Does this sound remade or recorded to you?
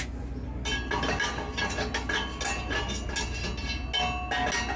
recorded